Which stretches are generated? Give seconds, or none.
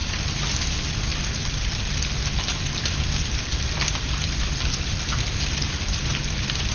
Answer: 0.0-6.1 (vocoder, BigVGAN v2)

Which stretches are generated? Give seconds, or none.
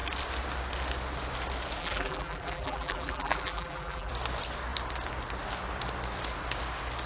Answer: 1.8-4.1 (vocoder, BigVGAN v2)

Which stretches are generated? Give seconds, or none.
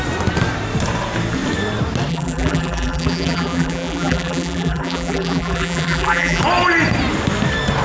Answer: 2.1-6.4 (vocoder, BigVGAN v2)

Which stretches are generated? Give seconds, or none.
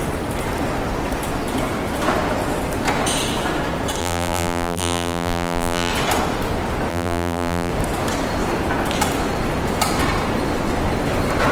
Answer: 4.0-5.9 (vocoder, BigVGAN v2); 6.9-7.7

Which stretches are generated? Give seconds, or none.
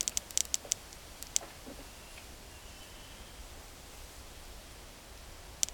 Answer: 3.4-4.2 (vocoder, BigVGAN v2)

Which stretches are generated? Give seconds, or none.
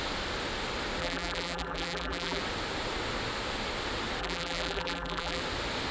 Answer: 1.0-2.4 (vocoder, BigVGAN v2); 4.2-5.4